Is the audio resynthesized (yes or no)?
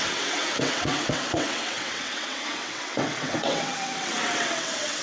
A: yes